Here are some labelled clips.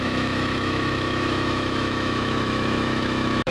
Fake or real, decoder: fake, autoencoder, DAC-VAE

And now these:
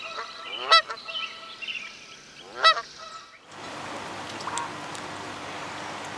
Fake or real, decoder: real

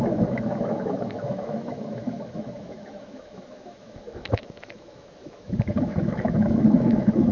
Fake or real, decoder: fake, autoencoder, DAC-VAE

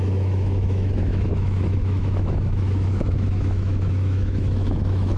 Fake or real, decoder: fake, autoencoder, DAC-VAE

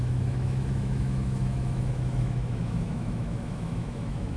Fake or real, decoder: fake, autoencoder, DAC-VAE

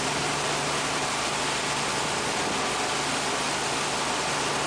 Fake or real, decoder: real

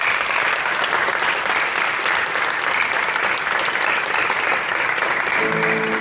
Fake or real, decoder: real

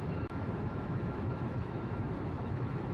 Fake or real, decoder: fake, autoencoder, DAC-VAE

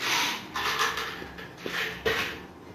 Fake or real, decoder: real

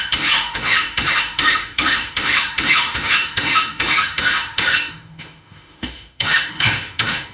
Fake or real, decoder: fake, autoencoder, DAC-VAE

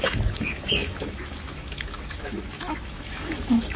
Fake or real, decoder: fake, autoencoder, DAC-VAE